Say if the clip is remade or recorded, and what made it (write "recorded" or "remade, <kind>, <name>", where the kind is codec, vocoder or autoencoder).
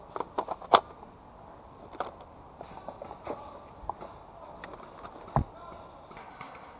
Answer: recorded